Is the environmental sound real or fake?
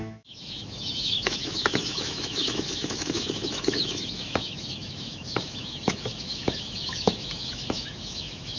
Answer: fake